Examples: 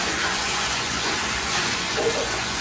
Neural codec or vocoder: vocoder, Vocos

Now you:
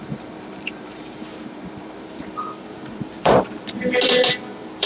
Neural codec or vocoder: vocoder, BigVGAN v2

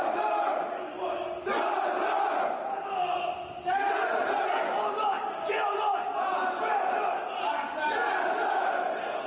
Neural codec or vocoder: none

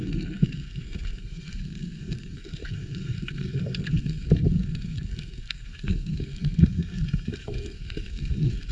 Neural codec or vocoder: codec, SNAC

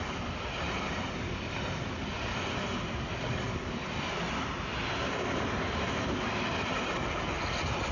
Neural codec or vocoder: none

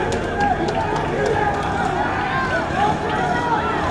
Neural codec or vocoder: none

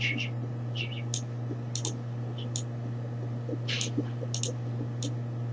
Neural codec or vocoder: none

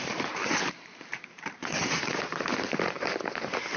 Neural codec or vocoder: vocoder, BigVGAN v2